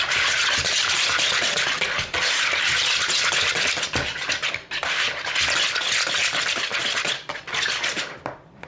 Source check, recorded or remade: recorded